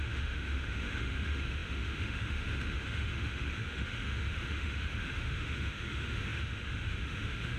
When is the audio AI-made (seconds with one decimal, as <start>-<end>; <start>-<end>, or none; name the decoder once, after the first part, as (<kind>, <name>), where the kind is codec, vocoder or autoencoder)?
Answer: 0.0-7.6 (autoencoder, DAC-VAE)